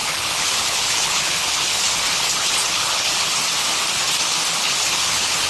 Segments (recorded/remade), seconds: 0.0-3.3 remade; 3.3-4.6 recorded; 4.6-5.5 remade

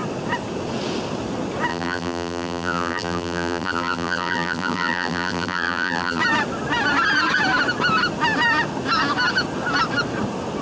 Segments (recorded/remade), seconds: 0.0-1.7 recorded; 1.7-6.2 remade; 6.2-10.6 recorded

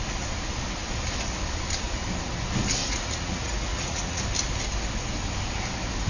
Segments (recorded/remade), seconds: 0.0-2.8 recorded; 2.8-4.2 remade; 4.2-6.1 recorded

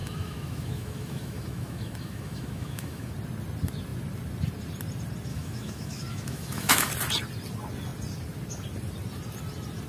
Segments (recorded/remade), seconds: 0.0-3.1 remade; 3.1-5.3 recorded; 5.3-6.9 remade; 6.9-9.9 recorded